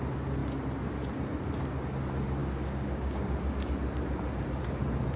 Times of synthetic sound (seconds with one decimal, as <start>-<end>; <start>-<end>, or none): 2.4-3.7